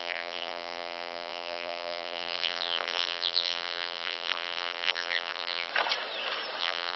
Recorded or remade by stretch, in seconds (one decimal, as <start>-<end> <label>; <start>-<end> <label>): 0.0-5.7 remade; 5.7-6.6 recorded; 6.6-7.0 remade